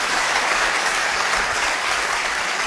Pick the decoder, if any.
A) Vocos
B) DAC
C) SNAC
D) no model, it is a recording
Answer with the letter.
B